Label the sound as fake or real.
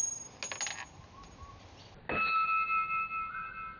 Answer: real